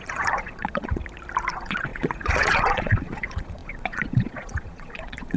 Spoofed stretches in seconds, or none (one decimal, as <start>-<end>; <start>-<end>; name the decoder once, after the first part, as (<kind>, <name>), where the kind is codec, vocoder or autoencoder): 0.0-1.0 (vocoder, Vocos); 1.5-5.4